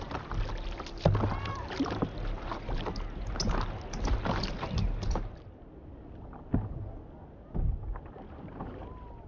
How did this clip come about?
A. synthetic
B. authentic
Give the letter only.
B